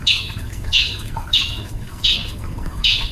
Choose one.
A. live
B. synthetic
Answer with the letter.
B